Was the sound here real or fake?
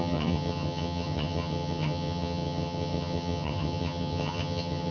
fake